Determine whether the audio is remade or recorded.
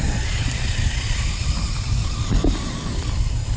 recorded